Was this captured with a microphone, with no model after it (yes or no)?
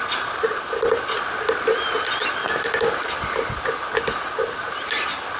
yes